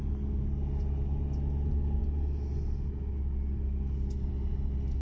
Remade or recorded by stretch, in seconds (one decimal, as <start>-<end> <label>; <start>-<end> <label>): 0.0-5.0 recorded